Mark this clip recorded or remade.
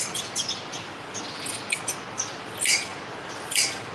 recorded